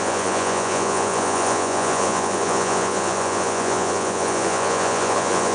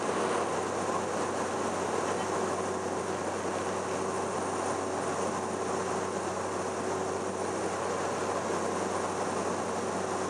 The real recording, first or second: second